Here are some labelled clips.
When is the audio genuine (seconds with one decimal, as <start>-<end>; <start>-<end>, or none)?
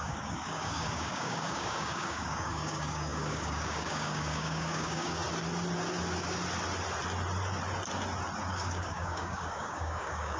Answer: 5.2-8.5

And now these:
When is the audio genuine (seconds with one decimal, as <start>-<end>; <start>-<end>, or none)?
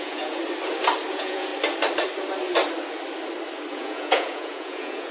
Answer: 0.4-1.1; 1.5-3.7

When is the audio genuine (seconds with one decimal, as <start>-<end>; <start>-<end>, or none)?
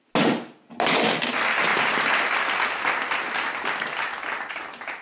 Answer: 0.0-5.0